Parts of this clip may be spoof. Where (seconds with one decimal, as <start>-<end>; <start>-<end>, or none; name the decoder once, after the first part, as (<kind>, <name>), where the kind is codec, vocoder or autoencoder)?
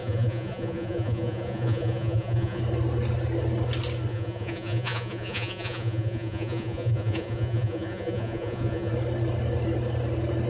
0.0-2.6 (vocoder, Vocos); 4.1-8.9